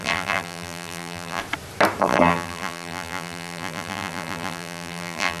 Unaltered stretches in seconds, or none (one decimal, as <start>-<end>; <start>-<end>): 1.4-2.0